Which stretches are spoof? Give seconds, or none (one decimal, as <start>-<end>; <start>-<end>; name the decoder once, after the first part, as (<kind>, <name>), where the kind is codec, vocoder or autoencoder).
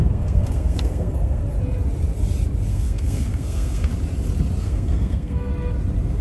0.0-1.4 (codec, SNAC); 2.7-3.9; 4.6-5.5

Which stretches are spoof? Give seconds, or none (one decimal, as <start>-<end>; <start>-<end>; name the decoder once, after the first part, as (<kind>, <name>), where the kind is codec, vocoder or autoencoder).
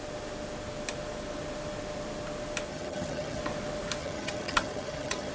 2.7-3.4 (vocoder, HiFi-GAN); 4.0-5.3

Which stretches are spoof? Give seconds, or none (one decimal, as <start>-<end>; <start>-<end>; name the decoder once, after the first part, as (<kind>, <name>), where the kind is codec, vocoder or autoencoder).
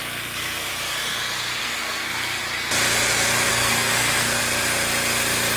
0.0-0.7 (codec, SNAC); 1.6-2.4; 3.5-4.4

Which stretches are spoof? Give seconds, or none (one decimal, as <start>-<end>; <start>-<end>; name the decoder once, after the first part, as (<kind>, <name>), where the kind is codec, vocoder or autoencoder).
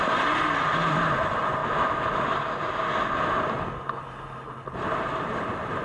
0.0-1.6 (vocoder, BigVGAN v2); 4.0-5.8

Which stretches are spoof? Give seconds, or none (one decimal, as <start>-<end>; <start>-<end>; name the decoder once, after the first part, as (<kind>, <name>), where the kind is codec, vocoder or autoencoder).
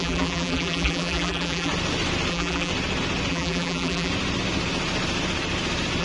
0.0-1.7 (vocoder, BigVGAN v2); 2.3-2.7; 3.3-4.1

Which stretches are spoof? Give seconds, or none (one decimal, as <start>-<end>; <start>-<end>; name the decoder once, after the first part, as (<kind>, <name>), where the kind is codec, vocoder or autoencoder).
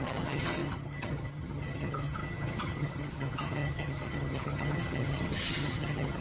0.0-6.2 (vocoder, HiFi-GAN)